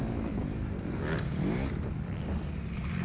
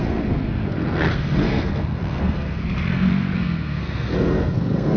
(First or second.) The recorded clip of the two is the first